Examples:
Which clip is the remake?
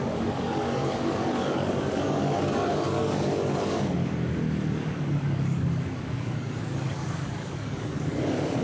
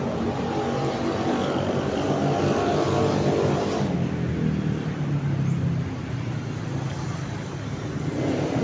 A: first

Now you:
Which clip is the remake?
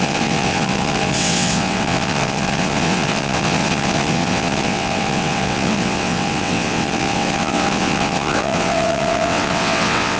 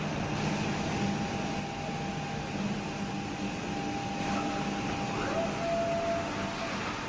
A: first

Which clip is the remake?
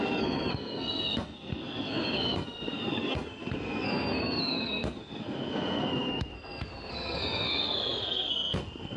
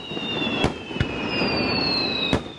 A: first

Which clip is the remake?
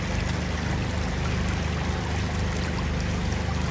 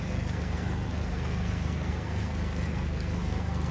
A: second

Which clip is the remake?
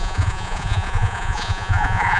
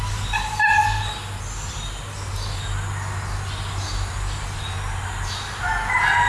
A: first